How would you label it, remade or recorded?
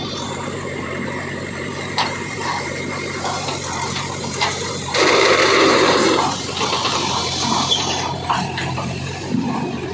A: remade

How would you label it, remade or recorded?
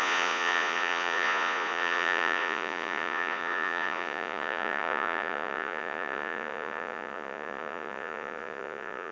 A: remade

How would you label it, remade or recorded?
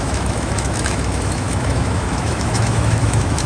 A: remade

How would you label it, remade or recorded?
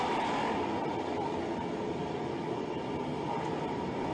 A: recorded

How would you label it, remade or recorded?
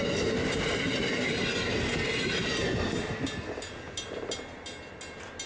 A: recorded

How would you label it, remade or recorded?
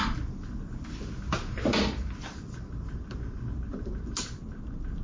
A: recorded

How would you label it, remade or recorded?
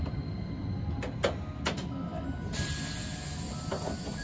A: recorded